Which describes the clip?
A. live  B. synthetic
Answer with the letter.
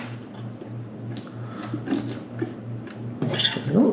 A